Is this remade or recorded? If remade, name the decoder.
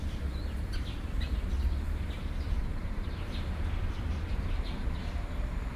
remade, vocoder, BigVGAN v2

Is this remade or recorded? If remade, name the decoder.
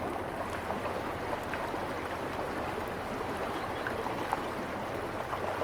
recorded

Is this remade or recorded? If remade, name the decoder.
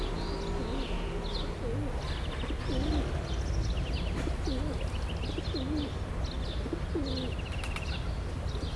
recorded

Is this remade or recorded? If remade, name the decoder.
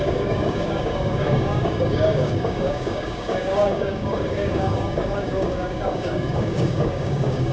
remade, codec, DAC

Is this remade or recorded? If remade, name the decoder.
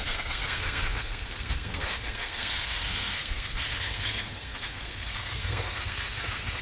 remade, codec, SNAC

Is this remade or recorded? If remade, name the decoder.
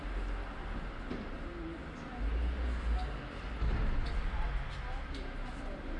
recorded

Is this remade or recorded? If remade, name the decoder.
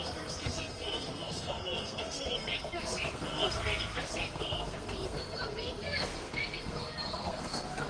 remade, codec, SNAC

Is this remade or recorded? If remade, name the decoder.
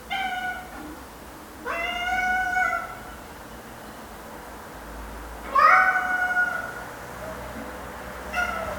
recorded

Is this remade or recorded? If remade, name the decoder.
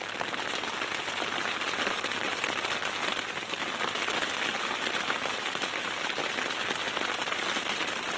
recorded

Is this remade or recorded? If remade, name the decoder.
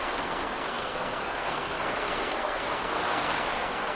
remade, codec, SNAC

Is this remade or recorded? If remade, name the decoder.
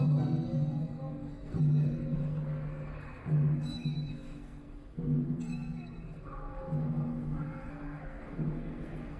remade, codec, SNAC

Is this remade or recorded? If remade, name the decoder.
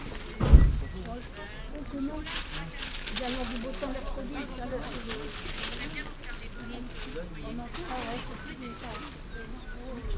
recorded